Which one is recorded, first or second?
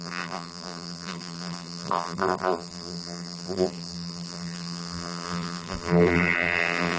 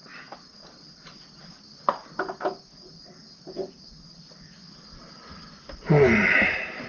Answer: second